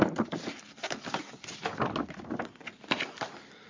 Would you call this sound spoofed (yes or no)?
no